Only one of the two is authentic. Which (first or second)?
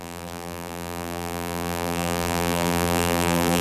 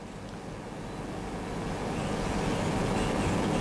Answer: second